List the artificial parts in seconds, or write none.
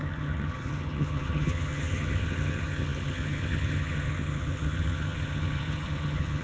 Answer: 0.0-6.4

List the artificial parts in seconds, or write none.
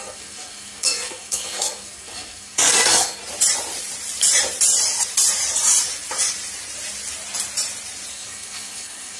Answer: 0.0-3.2; 8.1-9.2